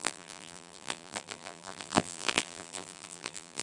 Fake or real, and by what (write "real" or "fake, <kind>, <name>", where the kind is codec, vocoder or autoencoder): fake, vocoder, BigVGAN v2